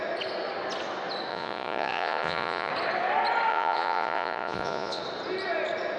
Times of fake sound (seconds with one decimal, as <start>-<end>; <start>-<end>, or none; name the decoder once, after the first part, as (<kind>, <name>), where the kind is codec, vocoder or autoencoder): 1.3-2.7 (vocoder, Vocos); 3.5-5.0